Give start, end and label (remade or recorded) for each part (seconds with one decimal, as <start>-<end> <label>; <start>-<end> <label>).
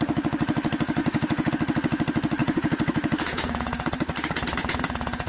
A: 0.0-1.0 recorded; 1.0-1.5 remade; 1.5-2.4 recorded; 2.4-3.9 remade; 3.9-4.6 recorded; 4.6-5.3 remade